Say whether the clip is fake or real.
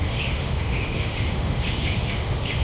fake